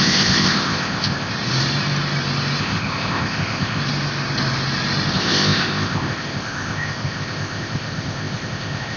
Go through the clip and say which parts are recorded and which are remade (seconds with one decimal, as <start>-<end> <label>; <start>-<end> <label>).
0.0-1.3 remade; 1.3-2.6 recorded; 2.6-3.8 remade; 3.8-5.1 recorded; 5.1-9.0 remade